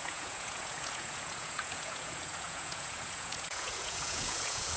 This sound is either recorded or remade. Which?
remade